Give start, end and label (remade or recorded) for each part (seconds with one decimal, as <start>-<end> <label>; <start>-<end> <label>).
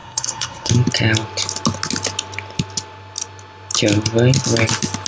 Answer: 0.0-0.7 remade; 0.7-5.1 recorded